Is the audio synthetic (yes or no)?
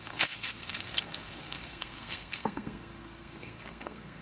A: yes